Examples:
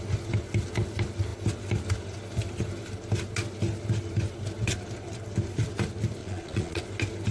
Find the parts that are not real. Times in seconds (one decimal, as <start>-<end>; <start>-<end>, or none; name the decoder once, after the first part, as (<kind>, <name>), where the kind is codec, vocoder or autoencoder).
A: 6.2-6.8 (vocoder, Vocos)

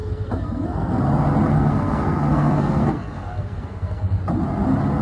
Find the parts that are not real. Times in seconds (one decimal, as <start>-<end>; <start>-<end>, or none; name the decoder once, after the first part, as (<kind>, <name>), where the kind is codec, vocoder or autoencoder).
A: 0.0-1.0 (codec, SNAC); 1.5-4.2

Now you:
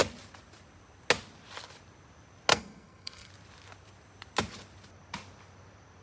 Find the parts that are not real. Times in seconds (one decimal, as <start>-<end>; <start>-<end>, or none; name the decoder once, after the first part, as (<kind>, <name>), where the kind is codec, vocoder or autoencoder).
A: 2.5-3.3 (codec, SNAC)

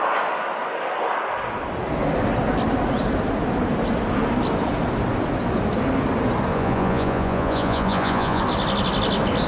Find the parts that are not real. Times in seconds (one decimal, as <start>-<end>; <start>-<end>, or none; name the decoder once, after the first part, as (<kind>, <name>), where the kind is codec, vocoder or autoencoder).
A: 6.5-8.4 (vocoder, Vocos)